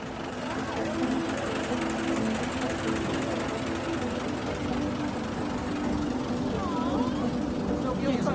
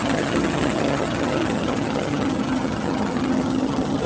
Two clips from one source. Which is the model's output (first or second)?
second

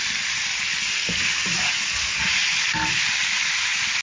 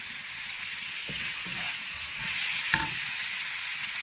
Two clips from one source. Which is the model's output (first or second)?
second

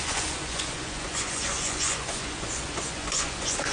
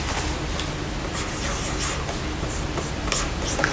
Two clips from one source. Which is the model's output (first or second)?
first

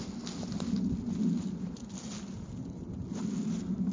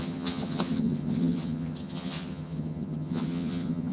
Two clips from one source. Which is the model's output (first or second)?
second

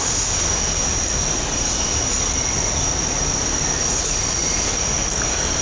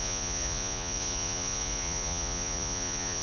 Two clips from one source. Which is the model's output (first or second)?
second